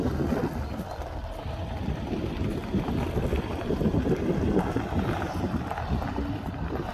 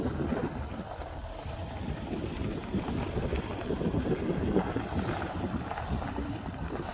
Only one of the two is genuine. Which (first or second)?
first